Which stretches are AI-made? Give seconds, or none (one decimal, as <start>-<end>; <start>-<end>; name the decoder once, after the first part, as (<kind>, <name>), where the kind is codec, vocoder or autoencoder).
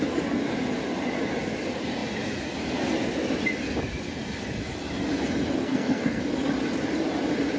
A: 5.6-6.2 (codec, SNAC)